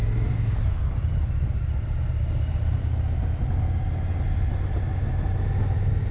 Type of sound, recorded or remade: recorded